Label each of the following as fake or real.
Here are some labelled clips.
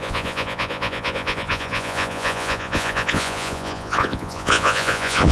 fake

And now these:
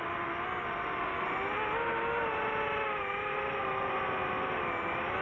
real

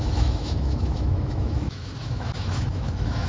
fake